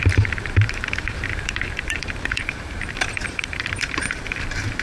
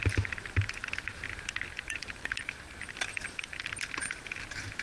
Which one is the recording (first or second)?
second